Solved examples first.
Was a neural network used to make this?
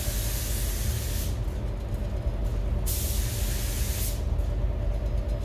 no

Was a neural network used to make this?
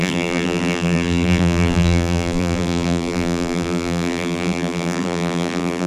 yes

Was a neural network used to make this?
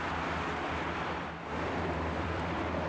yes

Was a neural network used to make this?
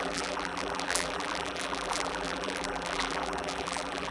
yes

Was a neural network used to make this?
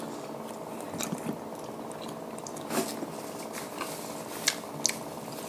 no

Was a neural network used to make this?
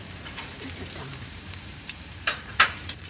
yes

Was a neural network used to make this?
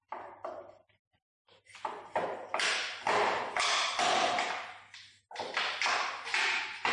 no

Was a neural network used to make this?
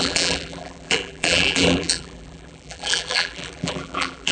yes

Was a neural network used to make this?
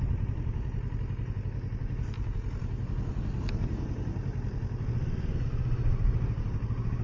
no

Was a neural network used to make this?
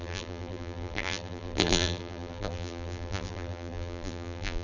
yes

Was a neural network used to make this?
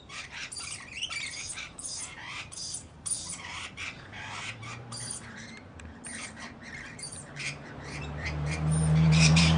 yes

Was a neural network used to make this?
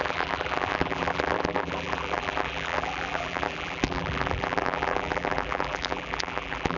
yes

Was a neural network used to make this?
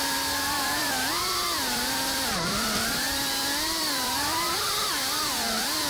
yes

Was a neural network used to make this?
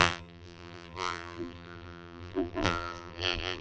yes